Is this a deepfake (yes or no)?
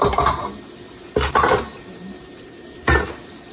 yes